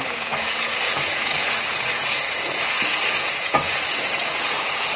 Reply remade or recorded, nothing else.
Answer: remade